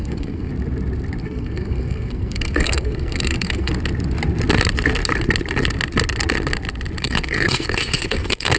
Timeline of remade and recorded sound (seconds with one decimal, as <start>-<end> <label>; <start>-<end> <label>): 0.0-0.5 remade; 0.5-1.2 recorded; 1.2-3.7 remade; 3.7-7.0 recorded; 7.0-8.6 remade